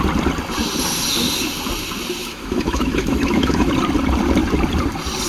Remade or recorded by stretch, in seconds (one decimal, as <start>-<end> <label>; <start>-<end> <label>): 0.0-2.2 recorded; 2.2-3.7 remade; 3.7-5.3 recorded